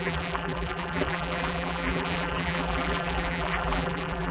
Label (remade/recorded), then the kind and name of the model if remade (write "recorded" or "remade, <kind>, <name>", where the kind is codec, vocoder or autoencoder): remade, vocoder, BigVGAN v2